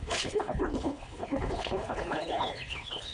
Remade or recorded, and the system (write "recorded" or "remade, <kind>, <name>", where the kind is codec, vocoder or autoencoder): remade, codec, HILCodec